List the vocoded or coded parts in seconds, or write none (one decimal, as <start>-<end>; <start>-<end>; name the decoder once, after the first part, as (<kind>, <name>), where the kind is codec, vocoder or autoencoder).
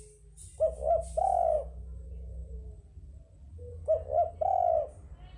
none